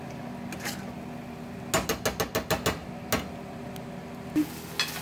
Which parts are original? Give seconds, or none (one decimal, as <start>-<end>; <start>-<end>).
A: 0.0-5.0